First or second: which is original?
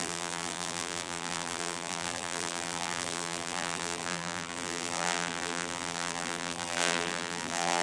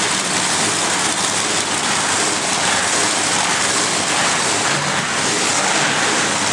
second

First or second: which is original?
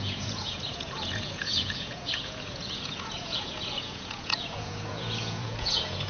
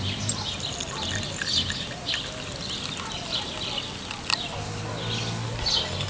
second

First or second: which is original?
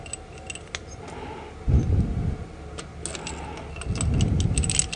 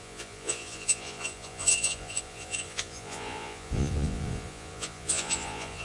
first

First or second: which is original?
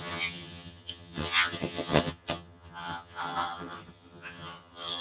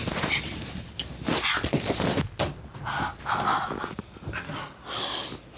second